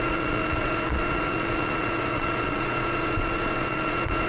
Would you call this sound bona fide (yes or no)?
no